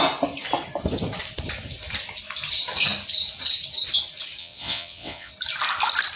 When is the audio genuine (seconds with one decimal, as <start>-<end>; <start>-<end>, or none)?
0.0-4.4; 5.3-6.2